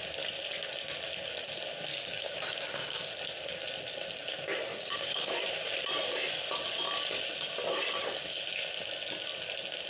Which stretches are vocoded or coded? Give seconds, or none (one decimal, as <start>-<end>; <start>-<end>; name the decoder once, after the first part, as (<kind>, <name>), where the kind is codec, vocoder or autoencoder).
1.9-3.1 (codec, DAC); 4.7-5.3